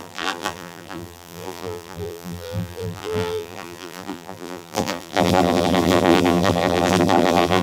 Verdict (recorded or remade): remade